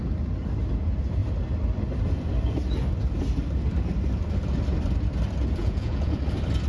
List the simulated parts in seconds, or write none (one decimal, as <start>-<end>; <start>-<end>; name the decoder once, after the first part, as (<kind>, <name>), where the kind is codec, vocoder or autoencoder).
5.6-6.2 (vocoder, Vocos)